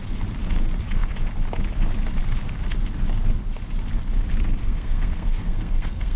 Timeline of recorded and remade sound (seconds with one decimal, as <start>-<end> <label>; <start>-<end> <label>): 0.0-4.6 recorded; 4.6-6.2 remade